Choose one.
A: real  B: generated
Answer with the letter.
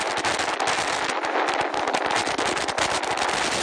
A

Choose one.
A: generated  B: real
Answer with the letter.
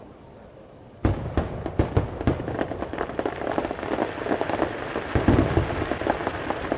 B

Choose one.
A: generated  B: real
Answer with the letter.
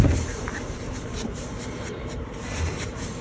A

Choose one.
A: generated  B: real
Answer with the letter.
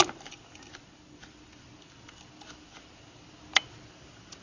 B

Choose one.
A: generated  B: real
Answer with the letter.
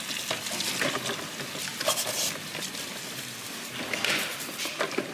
B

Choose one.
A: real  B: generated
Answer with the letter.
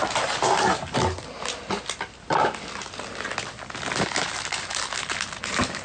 A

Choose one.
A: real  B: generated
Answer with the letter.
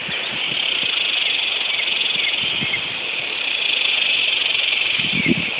A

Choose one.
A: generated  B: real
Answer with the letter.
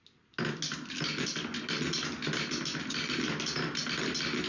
B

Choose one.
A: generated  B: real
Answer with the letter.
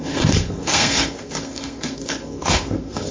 A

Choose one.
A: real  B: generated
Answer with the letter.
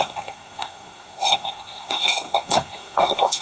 B